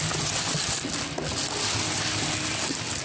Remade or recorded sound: recorded